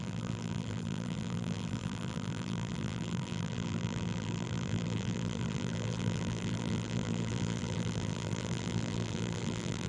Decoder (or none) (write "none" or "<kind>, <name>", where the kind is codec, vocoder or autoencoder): vocoder, BigVGAN v2